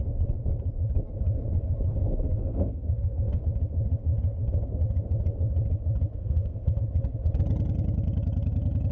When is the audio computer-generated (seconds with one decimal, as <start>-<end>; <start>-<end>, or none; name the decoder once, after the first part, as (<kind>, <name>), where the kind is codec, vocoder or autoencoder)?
1.9-3.4 (codec, SNAC); 6.2-6.8